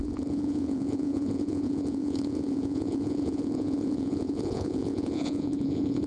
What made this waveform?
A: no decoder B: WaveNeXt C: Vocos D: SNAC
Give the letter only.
C